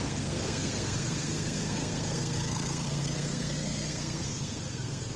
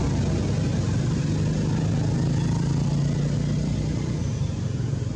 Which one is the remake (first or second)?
first